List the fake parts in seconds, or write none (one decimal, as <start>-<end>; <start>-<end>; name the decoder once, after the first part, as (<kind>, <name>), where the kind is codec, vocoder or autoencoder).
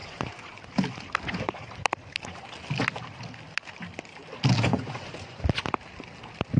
0.0-0.6 (vocoder, Vocos); 4.7-5.4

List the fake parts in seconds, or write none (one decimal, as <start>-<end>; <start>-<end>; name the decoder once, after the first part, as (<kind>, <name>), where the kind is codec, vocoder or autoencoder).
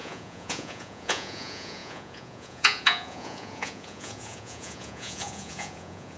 0.0-6.2 (vocoder, Vocos)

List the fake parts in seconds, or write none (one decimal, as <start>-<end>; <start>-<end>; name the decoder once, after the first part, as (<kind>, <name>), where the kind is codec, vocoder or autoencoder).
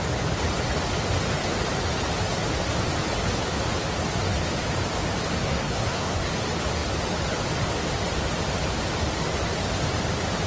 5.4-6.3 (codec, SNAC)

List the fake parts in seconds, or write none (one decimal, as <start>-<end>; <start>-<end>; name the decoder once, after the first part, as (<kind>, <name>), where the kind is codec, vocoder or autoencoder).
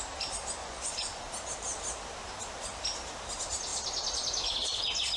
0.6-1.2 (vocoder, Vocos)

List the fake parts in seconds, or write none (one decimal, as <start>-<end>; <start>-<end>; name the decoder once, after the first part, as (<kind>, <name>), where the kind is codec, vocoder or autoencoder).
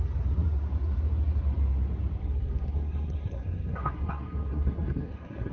2.2-5.5 (codec, SNAC)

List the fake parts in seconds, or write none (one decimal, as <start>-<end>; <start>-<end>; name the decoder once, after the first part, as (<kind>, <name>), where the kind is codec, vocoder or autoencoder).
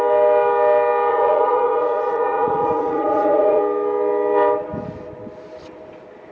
1.1-3.6 (vocoder, Vocos)